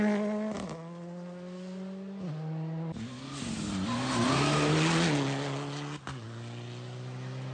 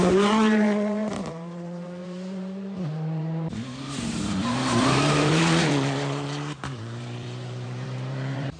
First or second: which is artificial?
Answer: second